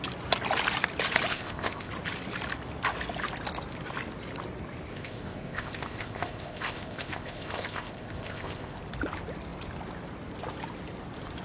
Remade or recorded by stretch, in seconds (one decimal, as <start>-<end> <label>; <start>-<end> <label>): 0.0-1.3 recorded; 1.3-1.9 remade; 1.9-4.9 recorded; 4.9-8.8 remade; 8.8-11.4 recorded